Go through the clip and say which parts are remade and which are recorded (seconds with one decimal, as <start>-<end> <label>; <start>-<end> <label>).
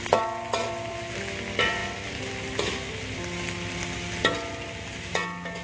0.0-5.6 recorded